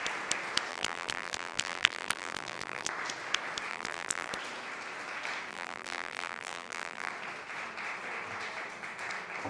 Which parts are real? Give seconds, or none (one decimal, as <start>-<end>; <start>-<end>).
0.0-0.7; 2.9-3.7; 4.3-5.5; 7.1-9.5